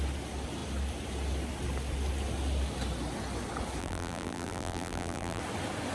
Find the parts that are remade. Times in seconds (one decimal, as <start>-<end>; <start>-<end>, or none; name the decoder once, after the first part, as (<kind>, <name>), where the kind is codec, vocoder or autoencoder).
3.8-5.4 (vocoder, BigVGAN v2)